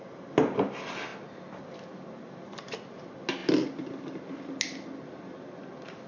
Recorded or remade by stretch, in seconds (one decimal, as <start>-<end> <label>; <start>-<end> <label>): 0.0-6.1 recorded